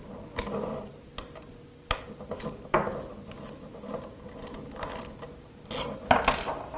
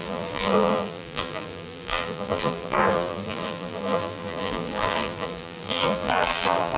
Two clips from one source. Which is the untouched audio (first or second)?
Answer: first